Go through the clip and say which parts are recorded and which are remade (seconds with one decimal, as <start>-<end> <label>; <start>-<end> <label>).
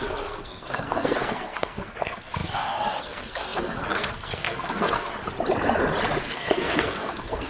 0.0-5.1 remade; 5.1-6.2 recorded; 6.2-7.5 remade